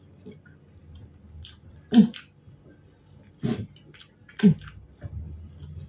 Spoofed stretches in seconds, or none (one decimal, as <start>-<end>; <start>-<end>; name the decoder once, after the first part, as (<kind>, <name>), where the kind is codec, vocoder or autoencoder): none